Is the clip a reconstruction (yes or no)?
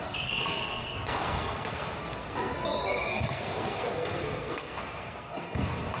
yes